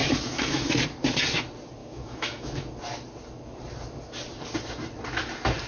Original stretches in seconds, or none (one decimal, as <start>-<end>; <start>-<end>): 0.7-1.8; 2.7-5.7